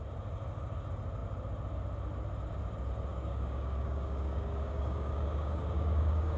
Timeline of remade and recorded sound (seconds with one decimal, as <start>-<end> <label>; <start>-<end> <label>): 0.0-3.1 recorded; 3.1-6.4 remade